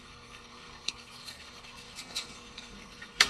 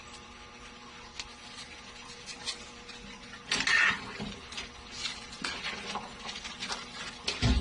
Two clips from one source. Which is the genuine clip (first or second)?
second